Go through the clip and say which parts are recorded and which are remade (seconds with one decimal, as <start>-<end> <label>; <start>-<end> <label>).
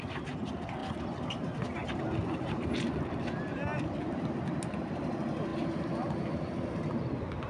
0.0-5.5 recorded; 5.5-6.9 remade; 6.9-7.5 recorded